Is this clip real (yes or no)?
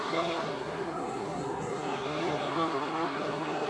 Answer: no